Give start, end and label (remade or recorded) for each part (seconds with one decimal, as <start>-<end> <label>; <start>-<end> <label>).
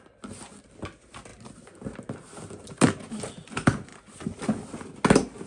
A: 0.0-5.5 recorded